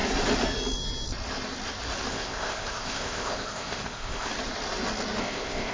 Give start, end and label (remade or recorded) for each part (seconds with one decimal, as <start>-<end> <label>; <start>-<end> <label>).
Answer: 0.0-2.1 recorded; 2.1-4.3 remade; 4.3-5.2 recorded; 5.2-5.7 remade